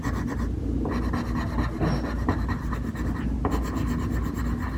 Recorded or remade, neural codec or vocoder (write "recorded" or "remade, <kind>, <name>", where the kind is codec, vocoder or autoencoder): recorded